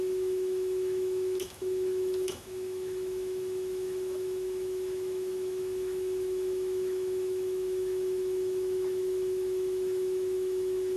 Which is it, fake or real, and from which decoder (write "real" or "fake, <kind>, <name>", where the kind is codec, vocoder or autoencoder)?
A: fake, autoencoder, DAC-VAE